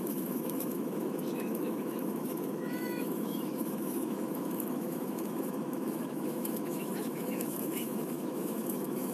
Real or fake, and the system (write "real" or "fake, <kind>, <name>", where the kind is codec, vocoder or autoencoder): fake, autoencoder, DAC-VAE